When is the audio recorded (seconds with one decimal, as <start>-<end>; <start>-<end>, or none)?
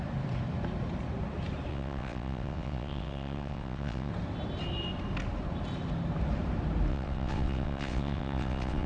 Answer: 0.0-1.7; 4.1-6.9